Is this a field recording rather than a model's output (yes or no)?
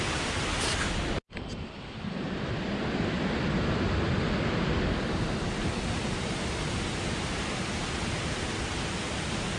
yes